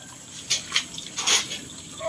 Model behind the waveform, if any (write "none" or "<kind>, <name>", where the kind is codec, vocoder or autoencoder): none